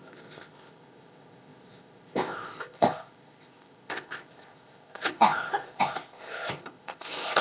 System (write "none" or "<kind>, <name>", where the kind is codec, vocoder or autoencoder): codec, ZipCodec